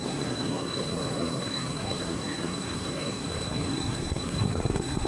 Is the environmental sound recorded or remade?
remade